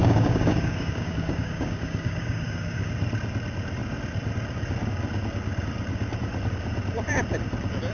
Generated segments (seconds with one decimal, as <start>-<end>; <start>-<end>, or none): 0.0-2.9